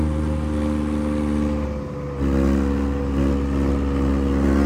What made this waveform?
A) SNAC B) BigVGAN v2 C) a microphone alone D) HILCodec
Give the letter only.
C